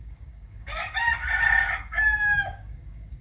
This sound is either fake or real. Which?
fake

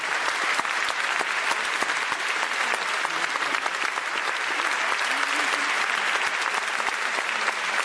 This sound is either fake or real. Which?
real